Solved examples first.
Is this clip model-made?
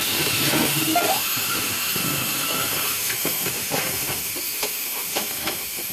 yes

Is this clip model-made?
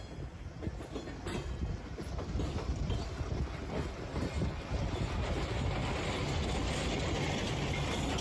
no